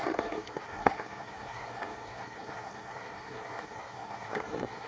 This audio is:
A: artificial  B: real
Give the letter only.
A